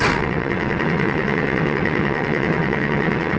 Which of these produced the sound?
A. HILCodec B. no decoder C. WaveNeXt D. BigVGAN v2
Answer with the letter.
C